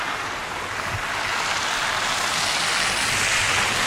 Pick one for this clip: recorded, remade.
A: recorded